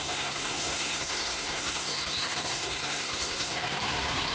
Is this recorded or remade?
remade